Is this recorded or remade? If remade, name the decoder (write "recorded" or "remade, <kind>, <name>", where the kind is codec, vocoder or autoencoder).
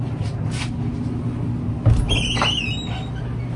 recorded